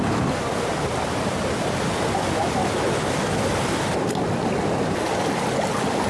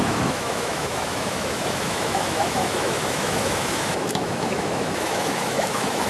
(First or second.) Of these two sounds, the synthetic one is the second